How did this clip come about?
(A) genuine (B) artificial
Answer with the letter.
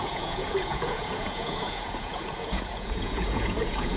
B